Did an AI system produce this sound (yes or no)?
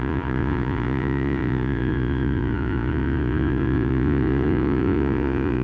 yes